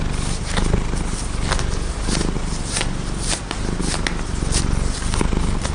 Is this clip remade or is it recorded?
recorded